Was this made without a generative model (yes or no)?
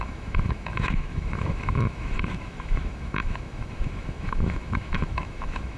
no